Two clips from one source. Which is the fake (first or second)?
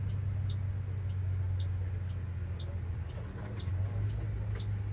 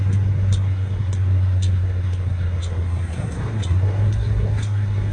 second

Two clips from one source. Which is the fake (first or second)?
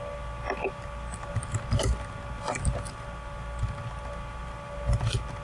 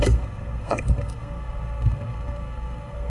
second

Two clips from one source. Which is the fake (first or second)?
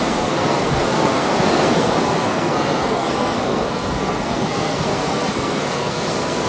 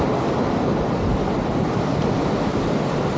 first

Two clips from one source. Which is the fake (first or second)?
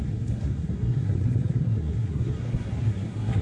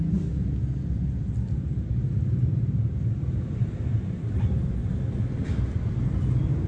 first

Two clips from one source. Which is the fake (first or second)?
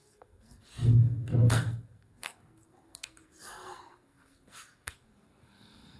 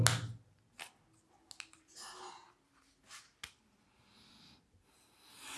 first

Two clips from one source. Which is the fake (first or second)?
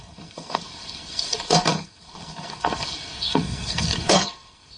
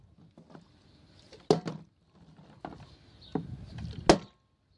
first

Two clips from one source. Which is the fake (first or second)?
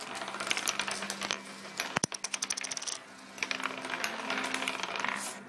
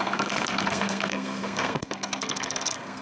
second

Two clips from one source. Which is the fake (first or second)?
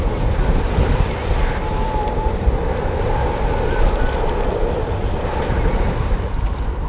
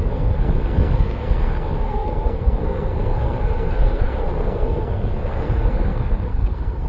second